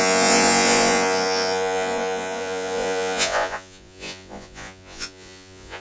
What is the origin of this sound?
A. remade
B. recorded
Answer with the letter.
A